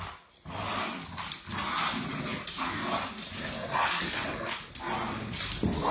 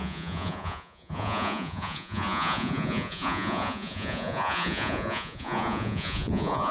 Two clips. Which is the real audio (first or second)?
first